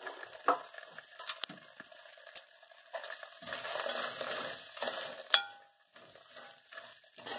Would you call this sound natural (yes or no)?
yes